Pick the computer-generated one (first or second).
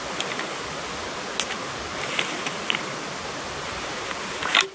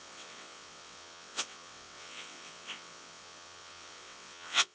second